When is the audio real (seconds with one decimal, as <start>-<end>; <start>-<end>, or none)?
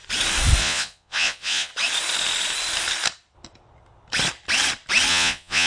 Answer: 0.0-0.6; 1.7-5.1